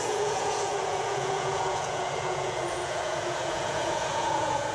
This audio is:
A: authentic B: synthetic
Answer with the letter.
B